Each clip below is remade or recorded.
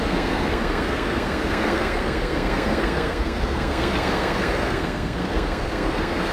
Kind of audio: remade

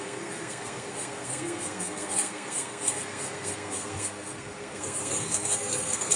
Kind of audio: remade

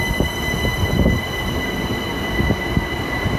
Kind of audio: recorded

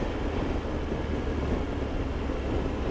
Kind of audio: recorded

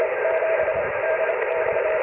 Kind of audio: remade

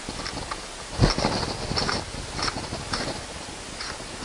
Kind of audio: recorded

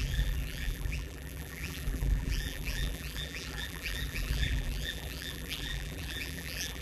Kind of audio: remade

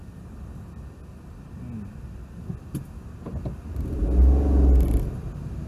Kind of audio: recorded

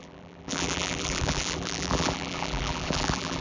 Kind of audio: remade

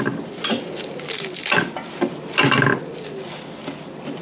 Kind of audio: recorded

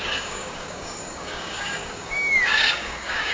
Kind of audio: remade